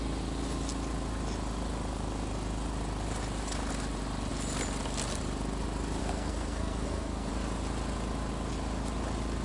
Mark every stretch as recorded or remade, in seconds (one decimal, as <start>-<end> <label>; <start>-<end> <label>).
0.0-6.0 recorded; 6.0-7.3 remade; 7.3-9.4 recorded